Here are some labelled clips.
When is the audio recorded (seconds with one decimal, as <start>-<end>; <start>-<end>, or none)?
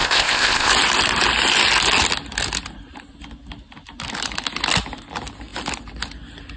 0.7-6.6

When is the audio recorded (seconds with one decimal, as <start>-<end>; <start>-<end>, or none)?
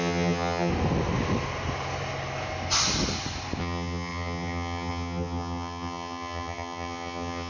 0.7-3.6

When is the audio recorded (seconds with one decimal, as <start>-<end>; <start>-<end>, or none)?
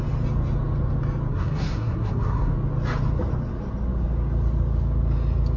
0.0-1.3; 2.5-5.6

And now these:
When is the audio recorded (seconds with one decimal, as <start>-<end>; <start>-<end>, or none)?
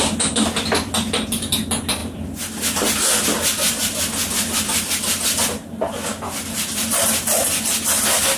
0.0-8.4